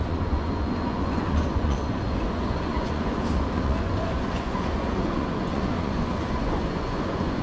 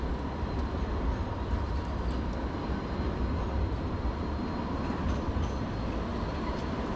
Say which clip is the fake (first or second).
first